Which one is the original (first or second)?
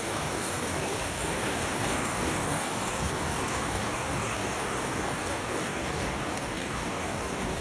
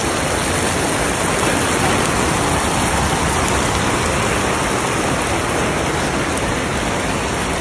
second